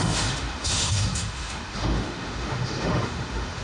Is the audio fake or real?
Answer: fake